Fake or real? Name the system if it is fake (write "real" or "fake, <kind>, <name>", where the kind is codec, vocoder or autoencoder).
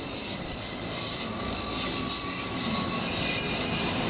fake, vocoder, BigVGAN v2